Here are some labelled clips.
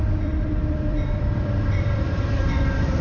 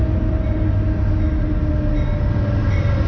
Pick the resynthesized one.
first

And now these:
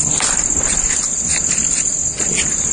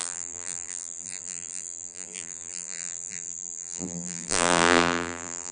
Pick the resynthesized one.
second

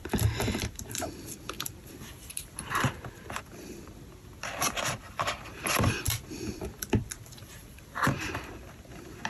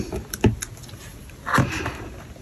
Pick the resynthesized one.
first